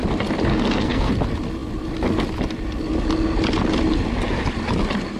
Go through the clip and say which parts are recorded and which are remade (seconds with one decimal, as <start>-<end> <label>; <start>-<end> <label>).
0.0-0.5 recorded; 0.5-1.1 remade; 1.1-5.2 recorded